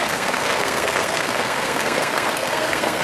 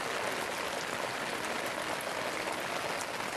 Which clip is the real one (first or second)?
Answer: second